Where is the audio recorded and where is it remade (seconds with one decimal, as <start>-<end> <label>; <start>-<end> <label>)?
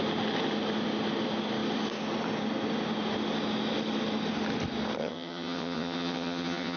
0.0-5.0 recorded; 5.0-6.8 remade